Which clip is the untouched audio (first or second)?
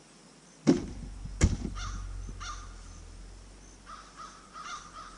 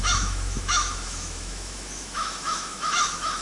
first